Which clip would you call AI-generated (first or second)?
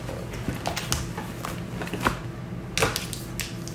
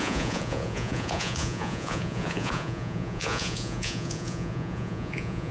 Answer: second